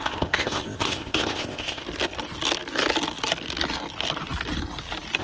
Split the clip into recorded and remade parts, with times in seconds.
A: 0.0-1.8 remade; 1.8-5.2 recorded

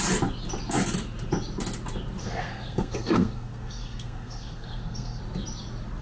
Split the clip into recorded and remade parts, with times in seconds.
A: 0.0-2.2 recorded; 2.2-5.2 remade; 5.2-6.0 recorded